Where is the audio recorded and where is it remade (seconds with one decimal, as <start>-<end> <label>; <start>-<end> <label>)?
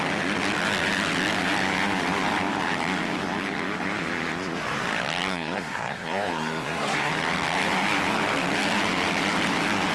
0.0-5.3 recorded; 5.3-7.1 remade; 7.1-9.9 recorded